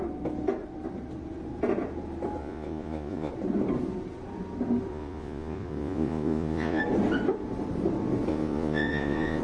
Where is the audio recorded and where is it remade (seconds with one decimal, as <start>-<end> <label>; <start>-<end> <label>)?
0.0-2.4 recorded; 2.4-3.3 remade; 3.3-4.9 recorded; 4.9-6.8 remade; 6.8-8.3 recorded; 8.3-9.4 remade